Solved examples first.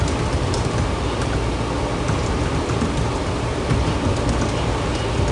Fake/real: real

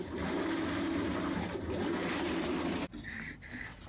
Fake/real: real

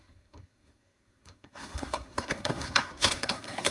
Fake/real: fake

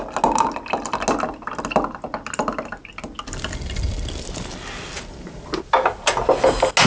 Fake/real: real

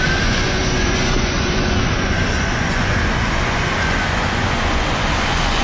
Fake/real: fake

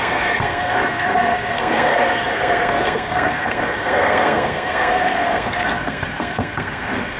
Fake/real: fake